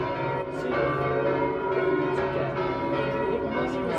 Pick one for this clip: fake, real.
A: real